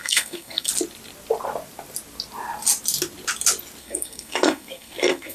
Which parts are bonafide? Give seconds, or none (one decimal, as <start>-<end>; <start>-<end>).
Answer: 0.7-3.8